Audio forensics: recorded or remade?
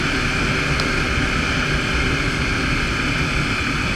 recorded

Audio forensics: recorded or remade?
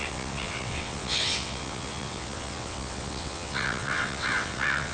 remade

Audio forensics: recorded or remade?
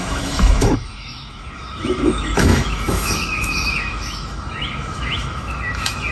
remade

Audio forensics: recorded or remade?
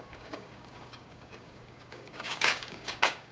remade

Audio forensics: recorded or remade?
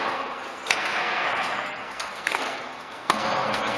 remade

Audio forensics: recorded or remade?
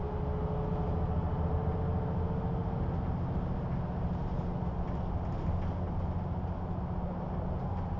recorded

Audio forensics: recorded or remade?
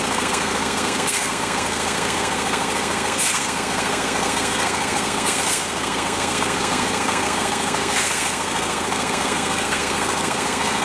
remade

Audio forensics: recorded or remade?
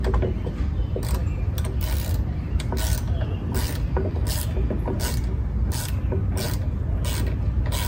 recorded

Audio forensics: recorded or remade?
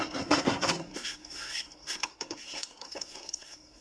remade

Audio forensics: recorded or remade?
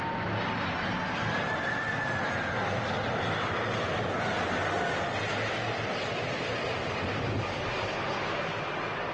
recorded